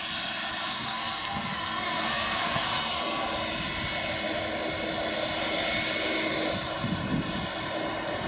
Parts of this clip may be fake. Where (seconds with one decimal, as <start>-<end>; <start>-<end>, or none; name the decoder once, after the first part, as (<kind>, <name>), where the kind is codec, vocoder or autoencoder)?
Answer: 0.7-3.0 (codec, SNAC)